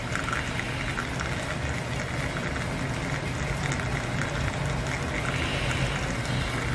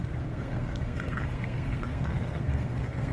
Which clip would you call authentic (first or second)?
first